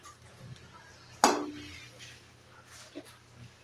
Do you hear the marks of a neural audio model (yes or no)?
no